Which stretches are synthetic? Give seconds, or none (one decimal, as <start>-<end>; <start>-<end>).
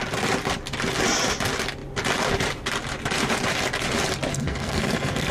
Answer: 4.3-5.3